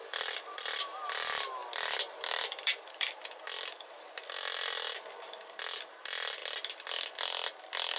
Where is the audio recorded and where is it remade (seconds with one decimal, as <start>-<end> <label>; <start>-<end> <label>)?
0.0-6.4 remade; 6.4-8.0 recorded